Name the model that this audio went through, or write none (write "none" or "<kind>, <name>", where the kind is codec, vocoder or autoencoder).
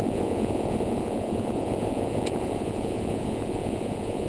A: vocoder, Vocos